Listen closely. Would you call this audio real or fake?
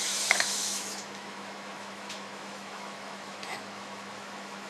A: fake